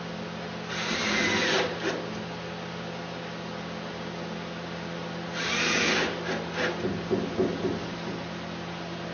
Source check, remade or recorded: recorded